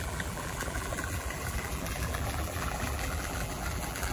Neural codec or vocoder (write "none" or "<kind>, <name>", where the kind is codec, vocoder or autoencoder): vocoder, BigVGAN v2